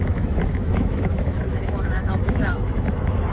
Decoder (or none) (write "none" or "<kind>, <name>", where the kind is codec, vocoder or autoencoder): autoencoder, DAC-VAE